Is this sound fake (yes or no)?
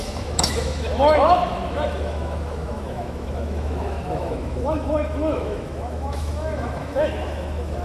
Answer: yes